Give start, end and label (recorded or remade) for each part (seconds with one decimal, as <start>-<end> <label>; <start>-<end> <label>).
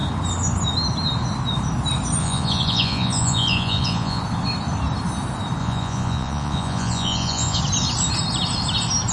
0.0-2.2 recorded; 2.2-4.2 remade; 4.2-5.6 recorded; 5.6-7.6 remade; 7.6-9.1 recorded